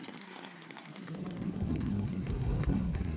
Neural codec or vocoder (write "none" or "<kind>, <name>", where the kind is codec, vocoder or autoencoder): codec, SNAC